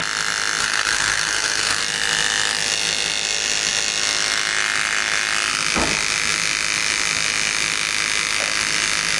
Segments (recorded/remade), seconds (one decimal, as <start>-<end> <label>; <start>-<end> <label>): 0.0-0.6 recorded; 0.6-1.8 remade; 1.8-9.2 recorded